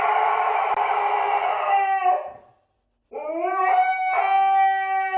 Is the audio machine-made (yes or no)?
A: no